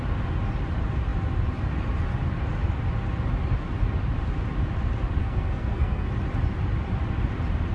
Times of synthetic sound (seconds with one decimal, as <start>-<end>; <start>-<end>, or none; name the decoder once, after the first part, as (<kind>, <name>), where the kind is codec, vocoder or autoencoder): 5.2-6.1 (codec, SNAC)